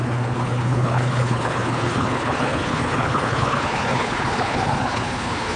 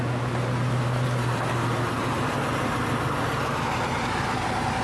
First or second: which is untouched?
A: second